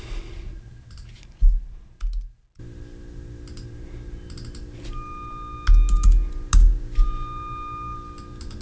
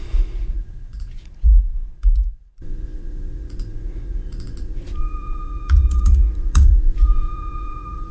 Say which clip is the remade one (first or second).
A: second